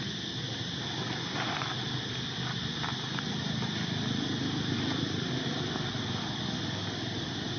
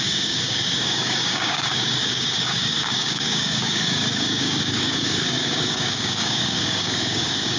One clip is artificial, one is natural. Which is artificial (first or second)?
second